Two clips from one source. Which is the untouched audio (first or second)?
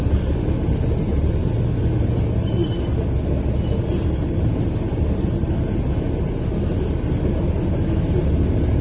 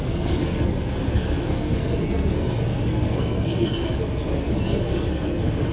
first